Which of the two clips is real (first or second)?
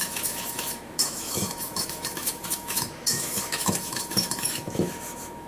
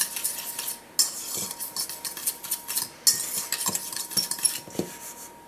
second